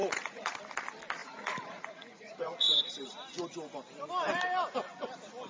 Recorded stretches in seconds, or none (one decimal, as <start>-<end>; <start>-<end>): 0.5-1.2; 2.9-5.5